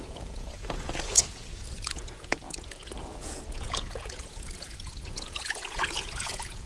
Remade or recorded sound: remade